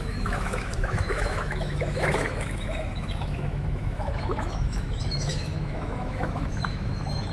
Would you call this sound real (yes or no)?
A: no